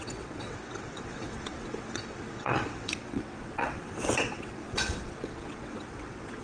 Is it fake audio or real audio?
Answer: fake